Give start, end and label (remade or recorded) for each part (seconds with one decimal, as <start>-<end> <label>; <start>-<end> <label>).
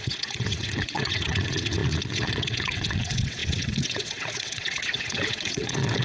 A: 0.0-6.0 remade